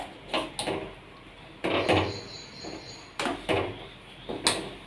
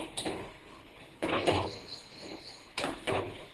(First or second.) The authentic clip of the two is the first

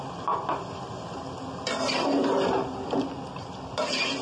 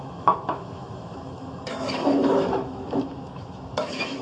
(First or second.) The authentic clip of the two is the first